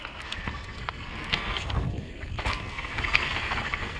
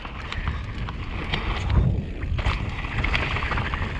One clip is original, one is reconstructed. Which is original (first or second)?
second